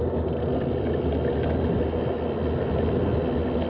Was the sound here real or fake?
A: real